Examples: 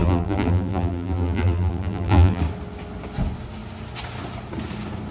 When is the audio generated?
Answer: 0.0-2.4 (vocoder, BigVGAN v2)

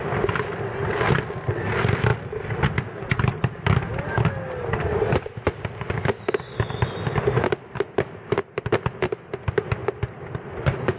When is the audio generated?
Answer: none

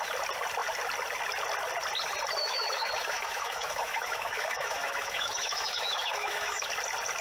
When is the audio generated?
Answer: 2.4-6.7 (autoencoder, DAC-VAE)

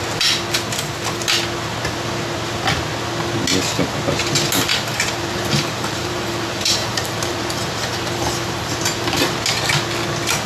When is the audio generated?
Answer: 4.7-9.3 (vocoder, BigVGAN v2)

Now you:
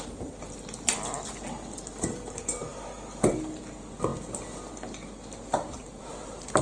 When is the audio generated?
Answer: none

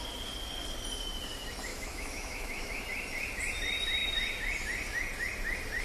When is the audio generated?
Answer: 1.7-2.8 (autoencoder, DAC-VAE)